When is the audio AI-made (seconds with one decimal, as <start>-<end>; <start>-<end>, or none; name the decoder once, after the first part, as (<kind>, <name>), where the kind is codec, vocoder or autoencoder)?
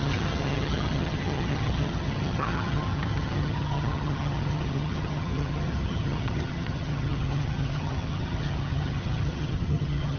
0.0-10.2 (vocoder, HiFi-GAN)